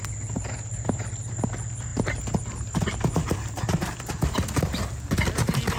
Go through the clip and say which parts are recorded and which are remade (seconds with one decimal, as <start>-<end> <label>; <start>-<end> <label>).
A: 0.0-5.8 recorded